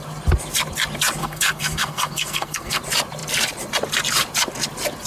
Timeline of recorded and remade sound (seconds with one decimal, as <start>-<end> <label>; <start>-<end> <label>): 0.0-1.2 recorded; 1.2-2.8 remade; 2.8-5.1 recorded